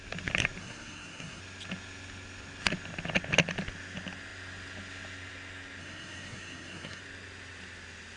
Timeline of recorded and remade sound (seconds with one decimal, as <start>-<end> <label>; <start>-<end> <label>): 0.0-0.6 recorded; 0.6-1.4 remade; 1.4-5.8 recorded; 5.8-7.0 remade; 7.0-8.2 recorded